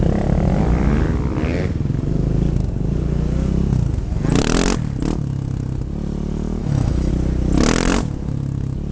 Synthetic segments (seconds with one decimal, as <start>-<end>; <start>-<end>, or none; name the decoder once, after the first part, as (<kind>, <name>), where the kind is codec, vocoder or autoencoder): 6.6-7.1 (autoencoder, DAC-VAE)